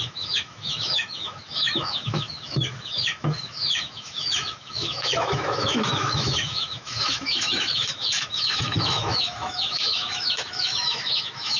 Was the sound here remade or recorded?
remade